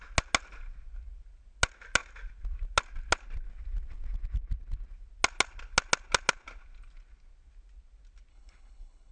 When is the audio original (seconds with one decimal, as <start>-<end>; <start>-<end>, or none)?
0.0-8.3